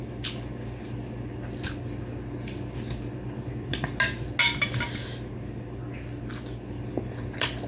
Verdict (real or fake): real